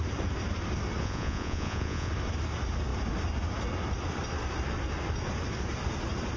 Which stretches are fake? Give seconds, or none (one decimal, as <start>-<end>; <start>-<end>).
1.0-2.1

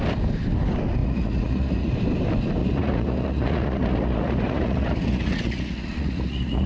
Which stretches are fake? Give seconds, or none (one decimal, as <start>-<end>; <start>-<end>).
1.0-1.9; 2.6-6.7